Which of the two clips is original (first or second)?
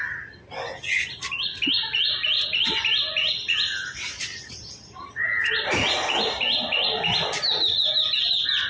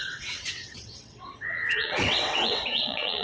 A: first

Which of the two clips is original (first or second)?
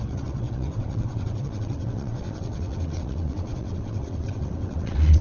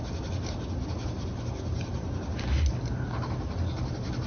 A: second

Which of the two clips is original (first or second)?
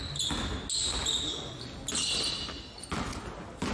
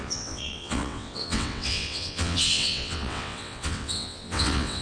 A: first